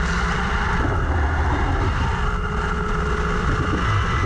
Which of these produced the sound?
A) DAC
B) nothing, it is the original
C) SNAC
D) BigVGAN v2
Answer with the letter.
B